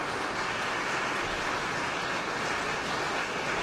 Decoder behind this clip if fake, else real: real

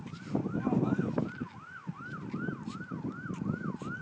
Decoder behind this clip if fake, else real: real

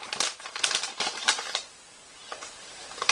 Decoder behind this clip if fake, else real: fake, vocoder, BigVGAN v2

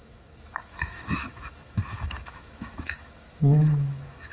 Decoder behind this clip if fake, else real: fake, autoencoder, DAC-VAE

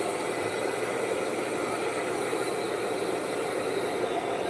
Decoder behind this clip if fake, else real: real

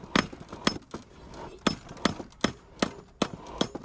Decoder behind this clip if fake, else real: real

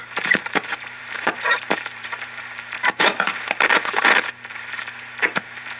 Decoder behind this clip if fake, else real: fake, vocoder, BigVGAN v2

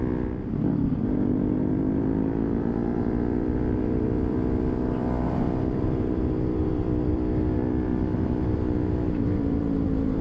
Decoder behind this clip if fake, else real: fake, vocoder, BigVGAN v2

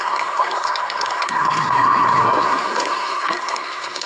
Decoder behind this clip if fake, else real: fake, codec, SNAC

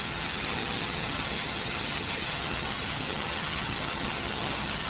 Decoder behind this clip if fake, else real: fake, vocoder, HiFi-GAN